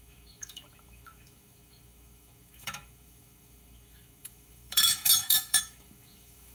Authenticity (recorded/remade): remade